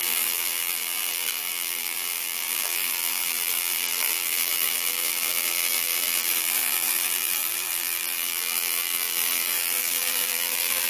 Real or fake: fake